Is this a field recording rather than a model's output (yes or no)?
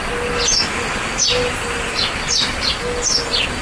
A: yes